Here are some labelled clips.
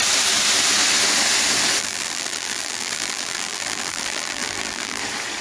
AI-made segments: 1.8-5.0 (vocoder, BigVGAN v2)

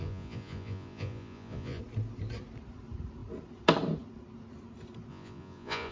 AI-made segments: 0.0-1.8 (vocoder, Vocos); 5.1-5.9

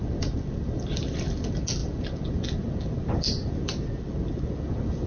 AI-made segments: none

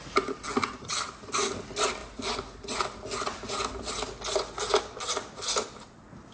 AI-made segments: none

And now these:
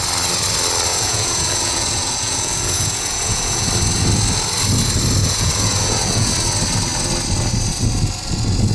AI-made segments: 0.9-3.7 (vocoder, Vocos); 5.2-6.3

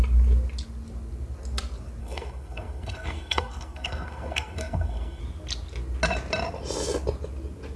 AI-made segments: 2.0-5.2 (codec, SNAC)